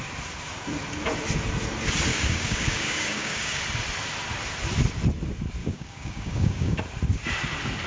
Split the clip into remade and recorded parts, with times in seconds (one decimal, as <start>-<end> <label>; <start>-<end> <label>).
0.0-2.1 recorded; 2.1-3.6 remade; 3.6-5.6 recorded; 5.6-6.8 remade; 6.8-7.9 recorded